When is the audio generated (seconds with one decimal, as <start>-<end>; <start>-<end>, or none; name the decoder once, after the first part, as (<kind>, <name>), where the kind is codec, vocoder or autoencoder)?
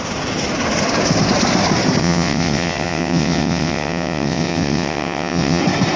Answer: 2.0-5.6 (vocoder, WaveNeXt)